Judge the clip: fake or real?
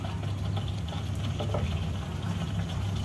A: real